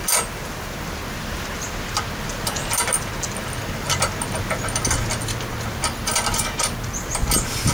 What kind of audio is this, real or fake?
real